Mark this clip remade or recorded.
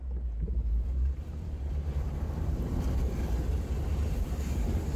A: remade